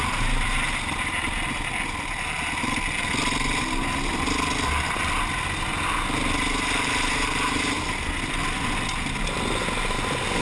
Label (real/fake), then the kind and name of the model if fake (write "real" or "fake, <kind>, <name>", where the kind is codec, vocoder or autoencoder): real